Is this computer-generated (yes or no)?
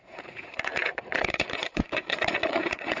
yes